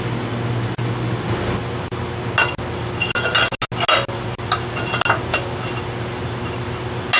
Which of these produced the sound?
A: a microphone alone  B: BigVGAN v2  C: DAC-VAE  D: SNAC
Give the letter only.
A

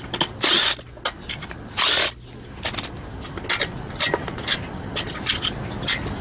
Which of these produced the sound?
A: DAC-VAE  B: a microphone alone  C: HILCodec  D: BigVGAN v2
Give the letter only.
B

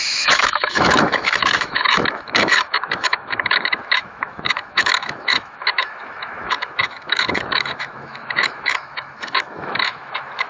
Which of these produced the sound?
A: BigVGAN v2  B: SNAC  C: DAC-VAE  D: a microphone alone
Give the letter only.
C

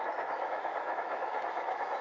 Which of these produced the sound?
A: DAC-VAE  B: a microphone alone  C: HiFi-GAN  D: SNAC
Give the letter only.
A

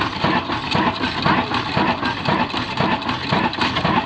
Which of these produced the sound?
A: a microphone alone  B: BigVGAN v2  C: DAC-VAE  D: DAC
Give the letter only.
A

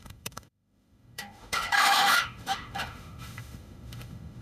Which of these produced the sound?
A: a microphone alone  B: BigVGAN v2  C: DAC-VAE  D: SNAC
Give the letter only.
C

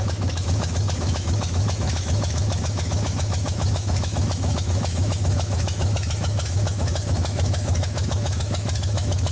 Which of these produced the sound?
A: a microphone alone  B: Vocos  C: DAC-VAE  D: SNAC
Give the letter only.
C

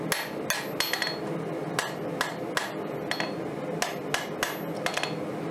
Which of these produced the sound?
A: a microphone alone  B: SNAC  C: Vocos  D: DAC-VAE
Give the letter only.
A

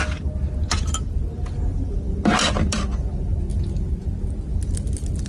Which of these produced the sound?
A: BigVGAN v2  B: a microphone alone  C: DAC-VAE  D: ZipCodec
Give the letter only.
B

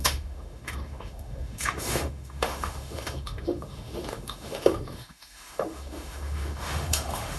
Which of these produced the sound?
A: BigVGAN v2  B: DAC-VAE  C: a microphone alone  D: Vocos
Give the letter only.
B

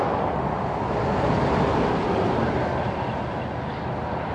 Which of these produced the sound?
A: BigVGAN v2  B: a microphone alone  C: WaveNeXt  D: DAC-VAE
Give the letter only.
B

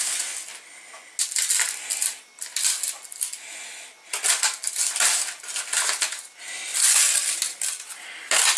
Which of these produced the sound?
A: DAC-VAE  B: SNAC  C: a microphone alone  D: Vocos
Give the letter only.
C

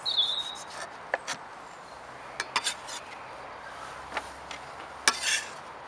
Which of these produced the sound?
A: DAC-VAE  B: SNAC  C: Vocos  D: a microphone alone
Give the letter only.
D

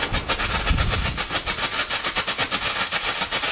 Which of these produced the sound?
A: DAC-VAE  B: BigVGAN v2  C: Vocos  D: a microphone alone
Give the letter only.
D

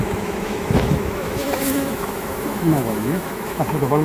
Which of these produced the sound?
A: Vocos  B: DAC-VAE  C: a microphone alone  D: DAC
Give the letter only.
B